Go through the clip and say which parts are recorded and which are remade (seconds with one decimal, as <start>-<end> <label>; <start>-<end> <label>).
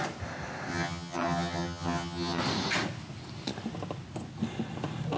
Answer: 0.0-0.7 recorded; 0.7-2.4 remade; 2.4-5.2 recorded